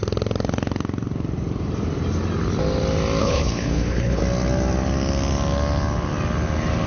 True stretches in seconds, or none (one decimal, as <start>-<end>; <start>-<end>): 0.0-3.2; 4.2-6.9